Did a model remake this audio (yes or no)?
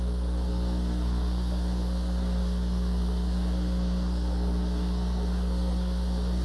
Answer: yes